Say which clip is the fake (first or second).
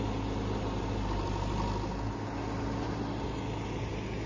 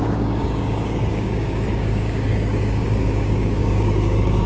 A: second